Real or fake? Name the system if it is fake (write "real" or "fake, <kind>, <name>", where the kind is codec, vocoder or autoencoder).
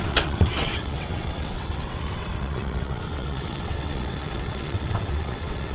fake, vocoder, WaveNeXt